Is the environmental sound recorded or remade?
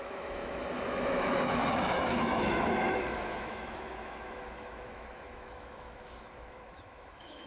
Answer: remade